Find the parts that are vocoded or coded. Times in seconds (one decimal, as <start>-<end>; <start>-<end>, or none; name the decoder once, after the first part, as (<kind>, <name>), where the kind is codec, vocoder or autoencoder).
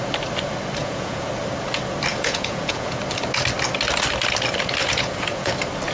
0.8-1.3 (vocoder, Vocos); 2.1-3.0; 4.8-5.5